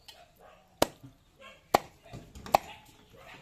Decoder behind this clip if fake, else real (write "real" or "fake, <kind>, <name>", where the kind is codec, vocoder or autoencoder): real